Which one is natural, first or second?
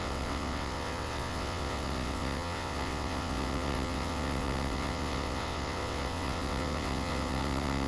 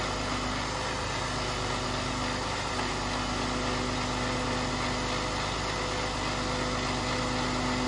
second